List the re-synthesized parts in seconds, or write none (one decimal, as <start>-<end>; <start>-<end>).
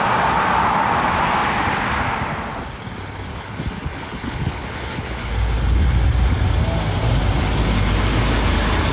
3.3-5.3